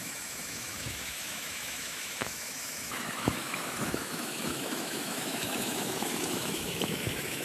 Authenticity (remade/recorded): remade